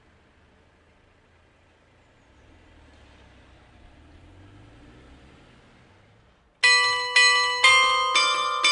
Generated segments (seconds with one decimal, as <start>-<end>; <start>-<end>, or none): none